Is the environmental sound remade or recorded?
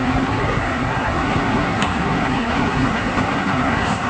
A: remade